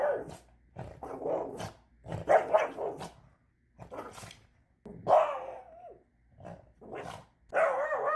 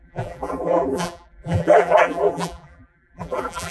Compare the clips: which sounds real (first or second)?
first